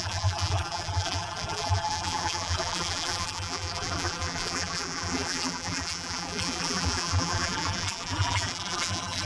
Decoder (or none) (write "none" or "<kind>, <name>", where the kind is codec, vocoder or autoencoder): vocoder, BigVGAN v2